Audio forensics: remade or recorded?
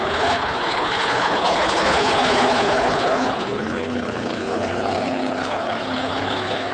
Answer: remade